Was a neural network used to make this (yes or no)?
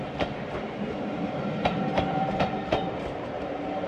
yes